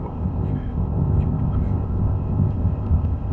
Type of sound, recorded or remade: remade